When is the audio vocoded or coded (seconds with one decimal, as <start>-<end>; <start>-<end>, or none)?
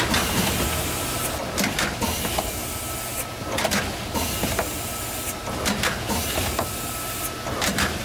none